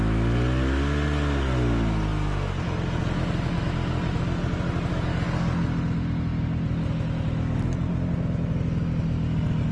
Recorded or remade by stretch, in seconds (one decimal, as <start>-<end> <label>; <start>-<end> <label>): 0.0-9.7 recorded